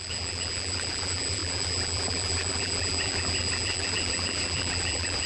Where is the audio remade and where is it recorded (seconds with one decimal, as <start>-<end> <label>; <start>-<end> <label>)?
0.0-5.3 remade